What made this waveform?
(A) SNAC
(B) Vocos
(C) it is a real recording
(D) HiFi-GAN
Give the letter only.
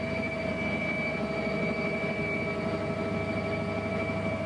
C